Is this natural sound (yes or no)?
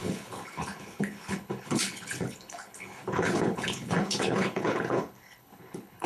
no